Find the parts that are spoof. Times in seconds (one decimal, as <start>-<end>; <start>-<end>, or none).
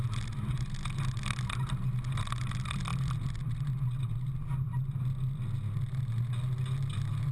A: none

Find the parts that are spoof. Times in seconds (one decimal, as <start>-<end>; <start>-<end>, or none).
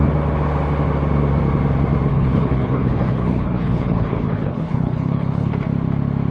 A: 2.1-5.5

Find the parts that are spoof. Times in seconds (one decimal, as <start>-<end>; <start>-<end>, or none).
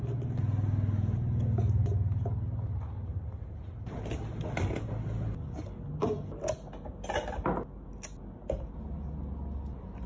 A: 3.1-4.0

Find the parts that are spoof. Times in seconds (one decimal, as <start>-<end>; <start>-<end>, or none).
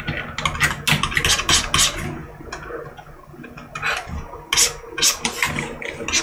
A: none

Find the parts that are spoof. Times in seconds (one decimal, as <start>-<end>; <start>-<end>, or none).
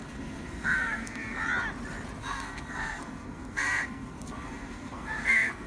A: 0.0-1.4; 2.2-5.7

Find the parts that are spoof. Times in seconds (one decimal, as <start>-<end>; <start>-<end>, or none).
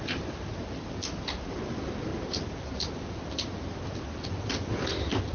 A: none